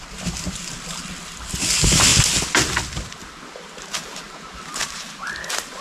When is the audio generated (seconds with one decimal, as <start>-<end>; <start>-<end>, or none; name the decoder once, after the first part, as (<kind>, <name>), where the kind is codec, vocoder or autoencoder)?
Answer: none